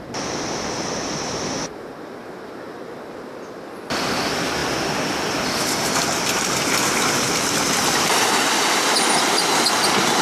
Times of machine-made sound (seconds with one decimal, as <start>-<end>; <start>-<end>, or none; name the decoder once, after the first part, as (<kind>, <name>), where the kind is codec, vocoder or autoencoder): none